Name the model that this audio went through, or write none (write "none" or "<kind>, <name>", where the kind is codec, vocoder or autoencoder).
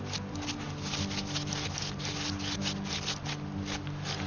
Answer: none